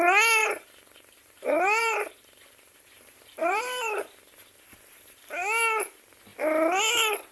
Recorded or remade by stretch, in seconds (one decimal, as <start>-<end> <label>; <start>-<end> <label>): 0.0-0.4 recorded; 0.4-4.3 remade; 4.3-7.3 recorded